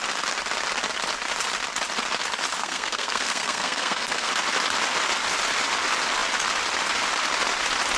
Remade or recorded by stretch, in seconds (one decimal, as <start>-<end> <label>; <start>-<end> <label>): 0.0-2.6 recorded; 2.6-4.3 remade; 4.3-8.0 recorded